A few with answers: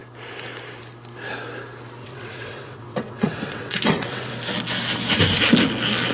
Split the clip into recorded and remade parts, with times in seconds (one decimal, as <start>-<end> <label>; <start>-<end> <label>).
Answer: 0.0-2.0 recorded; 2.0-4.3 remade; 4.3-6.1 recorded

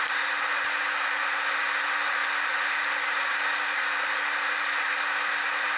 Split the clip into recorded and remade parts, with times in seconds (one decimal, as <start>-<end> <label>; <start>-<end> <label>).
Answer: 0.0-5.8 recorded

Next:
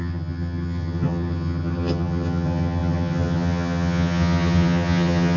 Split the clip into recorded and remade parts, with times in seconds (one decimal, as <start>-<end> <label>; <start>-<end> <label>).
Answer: 0.0-5.4 remade

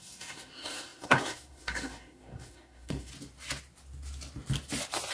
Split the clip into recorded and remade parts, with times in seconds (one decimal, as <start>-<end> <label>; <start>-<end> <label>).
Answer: 0.0-3.1 remade; 3.1-5.1 recorded